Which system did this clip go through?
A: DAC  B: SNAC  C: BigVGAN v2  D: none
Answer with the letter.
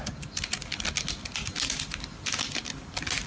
D